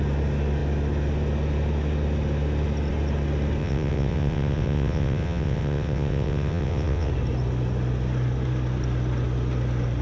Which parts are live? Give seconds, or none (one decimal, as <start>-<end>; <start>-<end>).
0.0-3.6; 7.1-10.0